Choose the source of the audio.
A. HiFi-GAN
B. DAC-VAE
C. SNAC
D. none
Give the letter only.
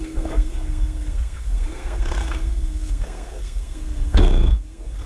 C